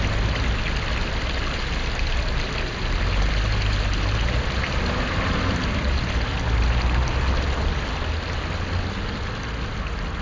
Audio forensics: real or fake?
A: real